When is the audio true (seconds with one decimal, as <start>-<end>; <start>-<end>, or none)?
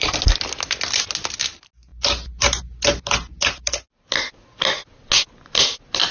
0.0-6.1